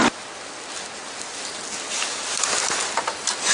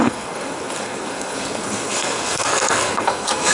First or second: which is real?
first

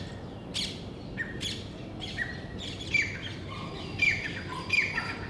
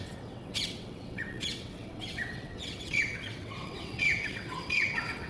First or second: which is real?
first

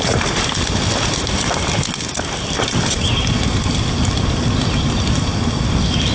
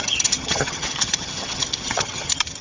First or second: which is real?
first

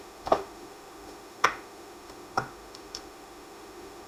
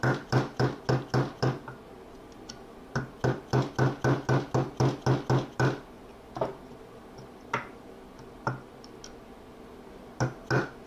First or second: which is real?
second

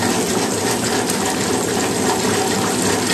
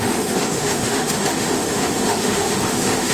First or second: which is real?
first